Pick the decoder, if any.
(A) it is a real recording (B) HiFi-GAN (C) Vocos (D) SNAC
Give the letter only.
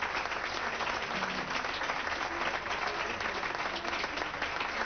A